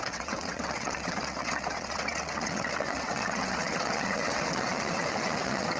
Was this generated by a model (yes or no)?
yes